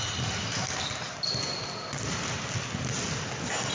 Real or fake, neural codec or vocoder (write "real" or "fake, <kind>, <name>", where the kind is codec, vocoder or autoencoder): real